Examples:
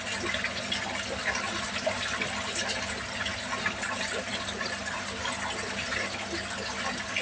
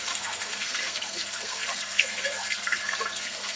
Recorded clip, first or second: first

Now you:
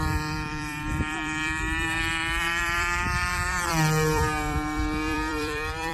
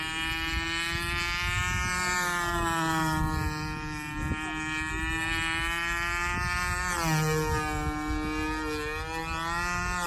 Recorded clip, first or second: second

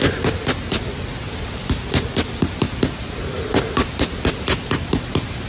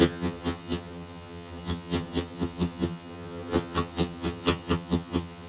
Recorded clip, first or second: first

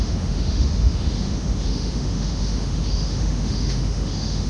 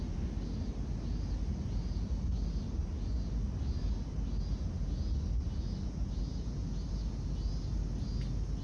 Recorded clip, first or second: second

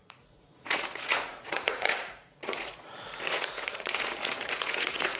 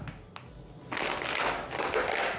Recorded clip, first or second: second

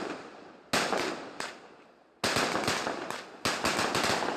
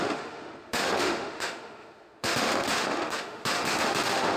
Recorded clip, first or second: first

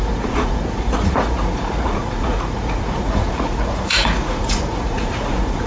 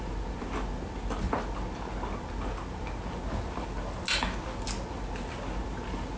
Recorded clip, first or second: second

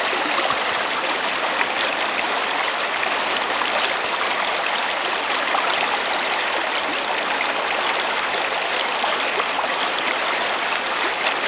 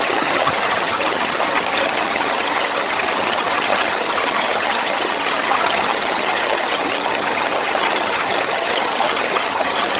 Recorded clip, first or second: first